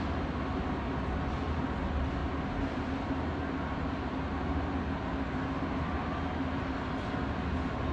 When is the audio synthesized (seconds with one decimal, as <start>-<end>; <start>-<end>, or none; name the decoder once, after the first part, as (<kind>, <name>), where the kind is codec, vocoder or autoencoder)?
none